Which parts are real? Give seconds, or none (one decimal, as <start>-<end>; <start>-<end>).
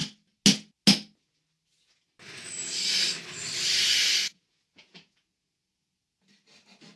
0.0-4.2; 6.1-7.0